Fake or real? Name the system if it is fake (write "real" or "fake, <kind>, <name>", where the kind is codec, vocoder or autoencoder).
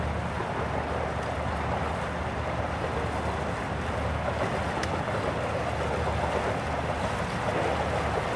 real